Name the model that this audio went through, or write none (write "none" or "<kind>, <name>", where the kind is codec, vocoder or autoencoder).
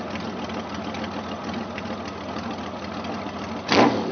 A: none